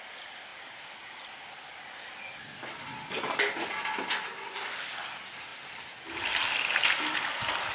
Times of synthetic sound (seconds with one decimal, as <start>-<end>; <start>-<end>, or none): none